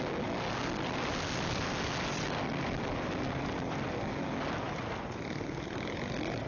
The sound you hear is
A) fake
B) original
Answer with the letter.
B